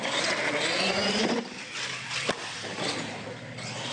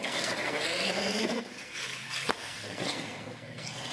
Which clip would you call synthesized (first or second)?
second